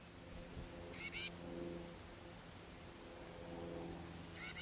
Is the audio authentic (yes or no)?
yes